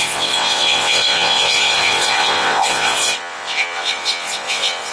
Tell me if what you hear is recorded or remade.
remade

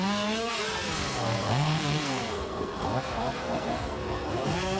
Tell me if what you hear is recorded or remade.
remade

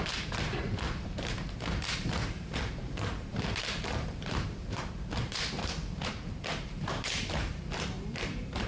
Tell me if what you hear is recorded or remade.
remade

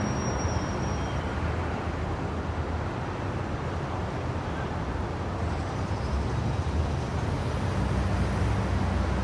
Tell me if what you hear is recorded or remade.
recorded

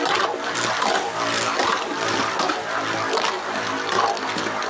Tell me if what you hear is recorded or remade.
recorded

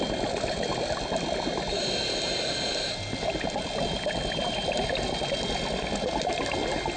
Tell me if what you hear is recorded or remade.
recorded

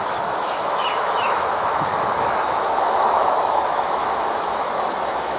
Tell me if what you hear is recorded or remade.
remade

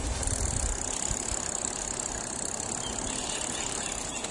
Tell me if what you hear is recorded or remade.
recorded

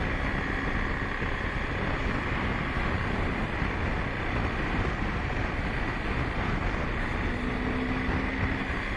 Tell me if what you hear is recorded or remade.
recorded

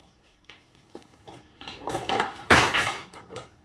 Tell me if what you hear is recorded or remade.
remade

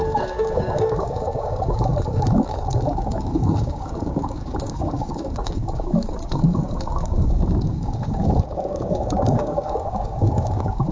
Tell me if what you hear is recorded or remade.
remade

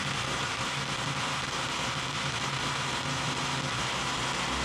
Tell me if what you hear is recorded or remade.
recorded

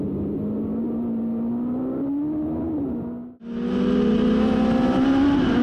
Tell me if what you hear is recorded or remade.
recorded